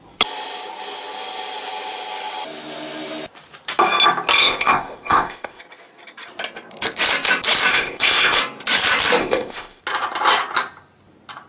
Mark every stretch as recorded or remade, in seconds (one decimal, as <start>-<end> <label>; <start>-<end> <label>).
0.0-4.4 recorded; 4.4-5.6 remade; 5.6-7.7 recorded; 7.7-8.4 remade; 8.4-9.2 recorded; 9.2-9.8 remade; 9.8-11.5 recorded